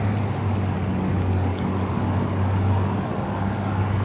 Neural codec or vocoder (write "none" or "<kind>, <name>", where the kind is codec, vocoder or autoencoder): codec, DAC